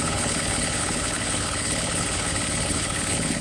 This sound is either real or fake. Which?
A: fake